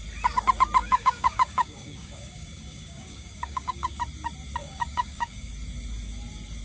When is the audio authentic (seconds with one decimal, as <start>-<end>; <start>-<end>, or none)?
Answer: 0.0-0.8; 4.0-4.6; 5.5-6.6